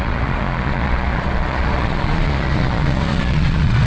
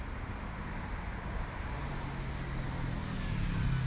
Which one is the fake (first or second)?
first